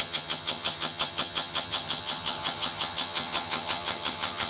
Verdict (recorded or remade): remade